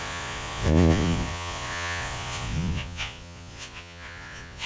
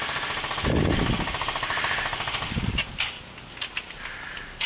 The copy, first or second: first